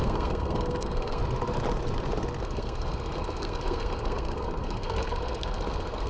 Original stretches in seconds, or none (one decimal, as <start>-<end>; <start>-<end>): 1.2-2.4